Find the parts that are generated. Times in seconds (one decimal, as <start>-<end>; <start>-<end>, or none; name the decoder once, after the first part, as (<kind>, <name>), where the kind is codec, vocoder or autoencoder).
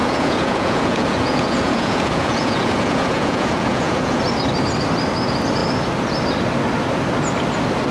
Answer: 0.0-4.2 (vocoder, Vocos)